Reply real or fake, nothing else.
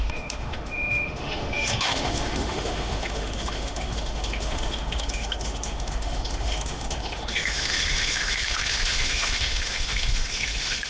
fake